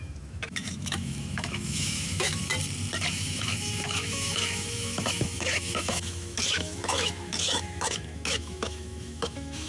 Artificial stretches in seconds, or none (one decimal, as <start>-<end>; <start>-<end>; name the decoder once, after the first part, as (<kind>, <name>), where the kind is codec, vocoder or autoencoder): 0.0-2.5 (autoencoder, DAC-VAE); 3.1-9.7